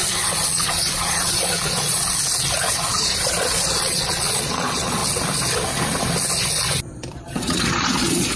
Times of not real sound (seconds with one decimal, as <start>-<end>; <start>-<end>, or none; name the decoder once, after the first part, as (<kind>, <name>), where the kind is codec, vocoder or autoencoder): 0.0-2.0 (vocoder, Vocos); 2.6-5.0; 7.1-8.4